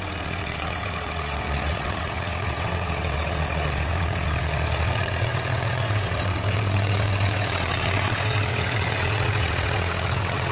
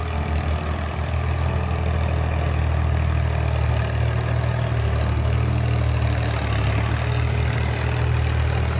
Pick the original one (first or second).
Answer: second